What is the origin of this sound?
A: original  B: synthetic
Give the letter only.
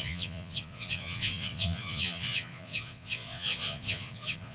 B